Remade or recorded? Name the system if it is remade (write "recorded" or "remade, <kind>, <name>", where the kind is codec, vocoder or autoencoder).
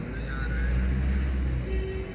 recorded